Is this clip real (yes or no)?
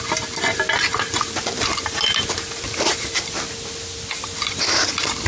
yes